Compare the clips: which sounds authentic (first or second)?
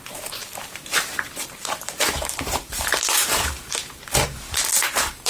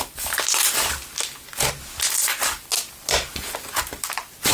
second